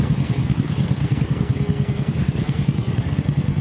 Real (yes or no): no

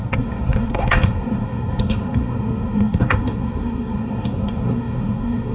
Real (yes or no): no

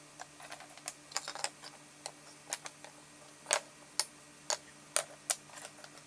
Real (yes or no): yes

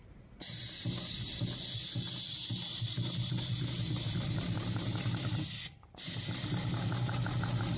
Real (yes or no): yes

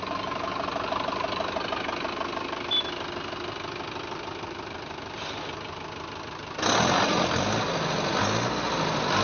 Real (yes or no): yes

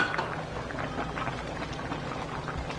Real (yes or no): yes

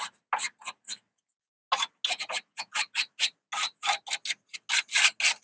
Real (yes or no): yes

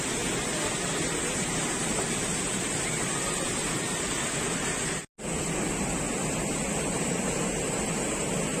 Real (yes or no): yes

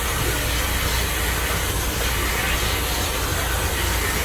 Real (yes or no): yes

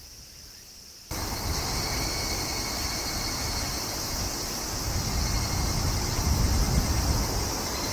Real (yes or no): yes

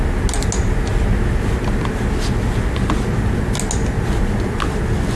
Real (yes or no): yes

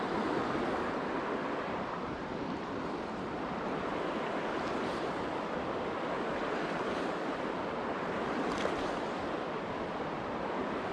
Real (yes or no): yes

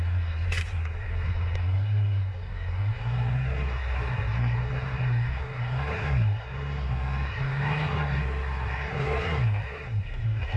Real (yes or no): no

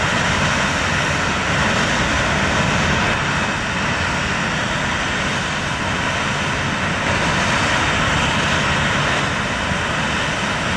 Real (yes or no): yes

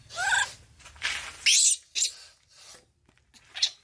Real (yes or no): yes